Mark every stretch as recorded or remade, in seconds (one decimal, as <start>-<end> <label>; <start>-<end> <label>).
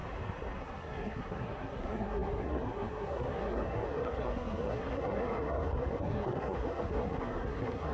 0.0-0.6 recorded; 0.6-7.9 remade